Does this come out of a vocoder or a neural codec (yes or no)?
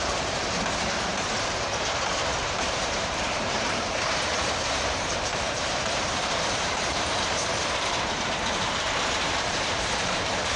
yes